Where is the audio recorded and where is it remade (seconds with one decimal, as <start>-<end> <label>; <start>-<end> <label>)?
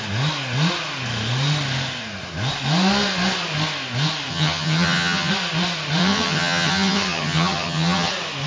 0.0-4.3 recorded; 4.3-5.3 remade; 5.3-6.0 recorded; 6.0-8.1 remade; 8.1-8.5 recorded